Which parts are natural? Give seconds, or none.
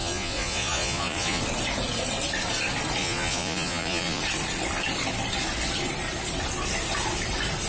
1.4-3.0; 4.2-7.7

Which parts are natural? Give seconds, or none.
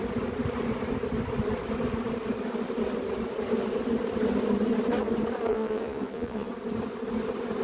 0.0-5.5; 6.5-7.6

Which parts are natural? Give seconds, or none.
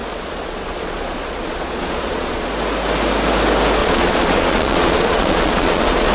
2.5-3.8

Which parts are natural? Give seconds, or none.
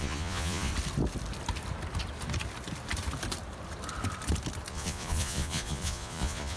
0.7-4.7